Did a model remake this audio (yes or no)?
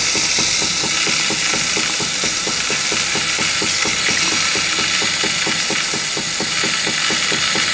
no